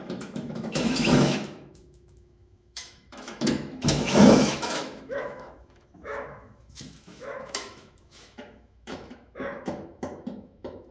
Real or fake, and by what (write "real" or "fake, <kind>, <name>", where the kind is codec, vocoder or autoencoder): fake, autoencoder, DAC-VAE